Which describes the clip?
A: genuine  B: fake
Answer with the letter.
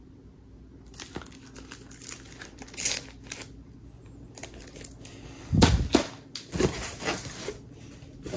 A